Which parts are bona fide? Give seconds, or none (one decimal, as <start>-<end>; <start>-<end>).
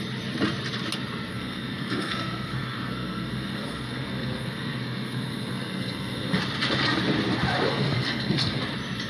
0.0-1.3; 6.4-7.7; 8.6-9.1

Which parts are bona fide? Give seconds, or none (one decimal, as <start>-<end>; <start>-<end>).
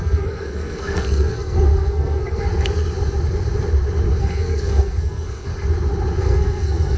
2.5-4.2; 5.5-6.2